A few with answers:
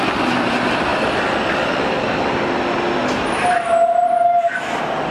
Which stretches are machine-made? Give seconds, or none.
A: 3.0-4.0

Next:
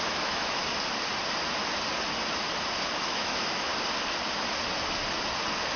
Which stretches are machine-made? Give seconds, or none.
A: 0.0-0.6; 3.1-3.7

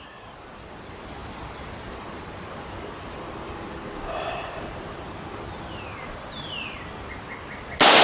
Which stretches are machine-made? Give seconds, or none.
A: none

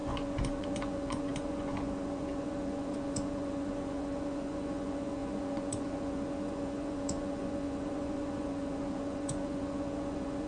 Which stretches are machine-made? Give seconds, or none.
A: 0.0-10.5

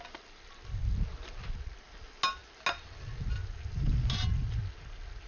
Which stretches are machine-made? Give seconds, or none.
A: none